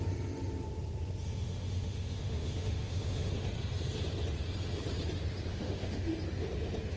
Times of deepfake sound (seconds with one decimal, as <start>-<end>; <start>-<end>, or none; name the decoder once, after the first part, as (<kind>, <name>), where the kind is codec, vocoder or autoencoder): 1.2-3.3 (autoencoder, DAC-VAE); 5.5-6.1